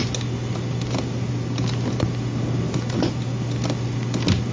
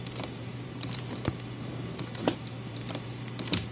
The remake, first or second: second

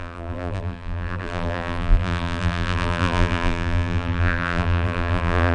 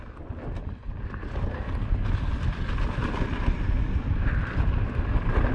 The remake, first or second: first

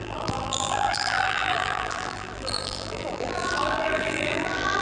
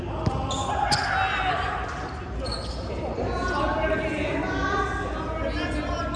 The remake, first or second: first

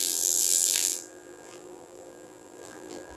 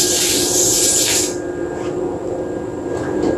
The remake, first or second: first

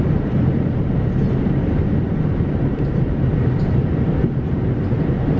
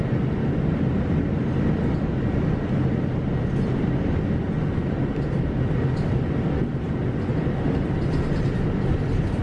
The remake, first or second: first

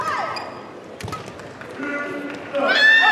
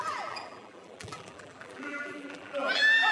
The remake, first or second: second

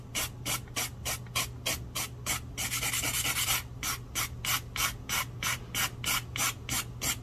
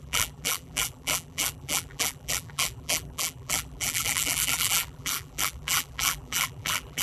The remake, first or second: second